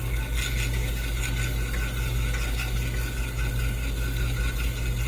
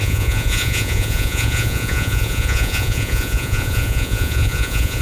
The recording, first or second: first